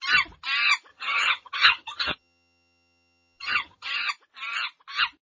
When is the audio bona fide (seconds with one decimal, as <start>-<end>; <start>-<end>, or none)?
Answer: 0.0-0.9; 4.1-5.3